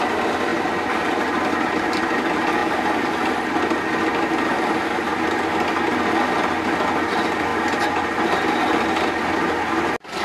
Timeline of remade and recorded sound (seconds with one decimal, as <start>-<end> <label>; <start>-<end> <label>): 0.0-10.2 recorded